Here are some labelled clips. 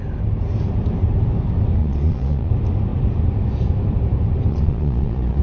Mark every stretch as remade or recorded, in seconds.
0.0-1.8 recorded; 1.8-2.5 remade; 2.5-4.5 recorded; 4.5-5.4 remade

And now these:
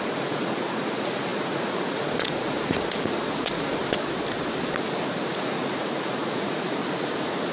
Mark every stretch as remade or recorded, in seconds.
0.0-3.8 remade; 3.8-5.3 recorded; 5.3-6.8 remade; 6.8-7.5 recorded

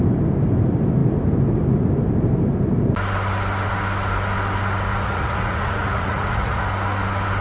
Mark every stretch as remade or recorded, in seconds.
0.0-4.9 recorded; 4.9-6.6 remade; 6.6-7.4 recorded

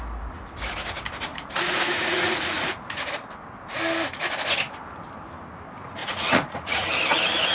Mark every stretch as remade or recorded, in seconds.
0.0-1.3 recorded; 1.3-2.7 remade; 2.7-6.0 recorded; 6.0-6.9 remade; 6.9-7.5 recorded